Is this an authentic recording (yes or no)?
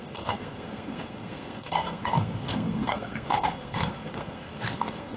no